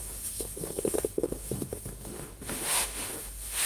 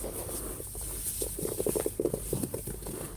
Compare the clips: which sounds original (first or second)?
second